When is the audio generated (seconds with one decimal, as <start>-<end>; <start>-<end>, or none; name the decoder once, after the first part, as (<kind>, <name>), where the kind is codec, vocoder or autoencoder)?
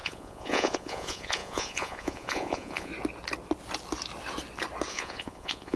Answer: 0.0-2.9 (vocoder, Vocos); 4.9-5.8